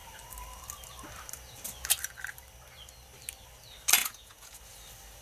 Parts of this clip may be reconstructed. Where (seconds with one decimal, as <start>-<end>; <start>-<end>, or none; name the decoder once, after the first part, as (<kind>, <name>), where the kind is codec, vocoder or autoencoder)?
4.0-4.6 (vocoder, Vocos)